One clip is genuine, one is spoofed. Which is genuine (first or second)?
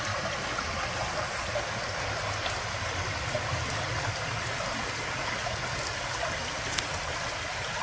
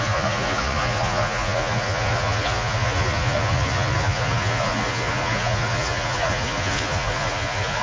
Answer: first